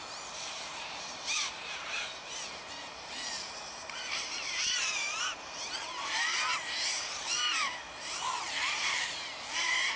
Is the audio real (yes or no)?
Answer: no